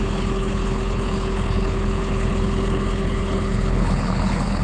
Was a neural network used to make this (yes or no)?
yes